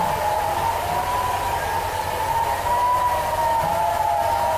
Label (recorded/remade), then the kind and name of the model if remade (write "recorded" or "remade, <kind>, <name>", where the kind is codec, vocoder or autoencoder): recorded